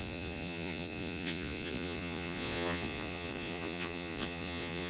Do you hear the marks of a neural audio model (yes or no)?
yes